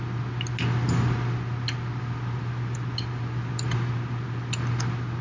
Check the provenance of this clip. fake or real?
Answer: real